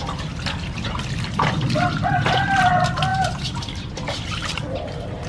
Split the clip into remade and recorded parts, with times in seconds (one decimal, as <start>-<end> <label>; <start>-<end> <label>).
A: 0.0-5.3 recorded